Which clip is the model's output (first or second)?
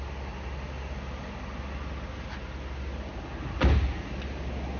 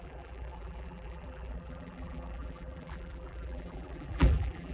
second